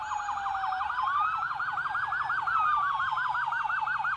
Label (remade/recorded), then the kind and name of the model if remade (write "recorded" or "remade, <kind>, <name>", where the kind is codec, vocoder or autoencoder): recorded